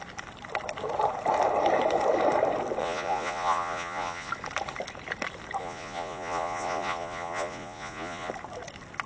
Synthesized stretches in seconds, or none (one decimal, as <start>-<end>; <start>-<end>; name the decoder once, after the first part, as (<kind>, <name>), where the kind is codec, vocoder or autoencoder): 2.8-4.3 (vocoder, Vocos); 5.6-8.3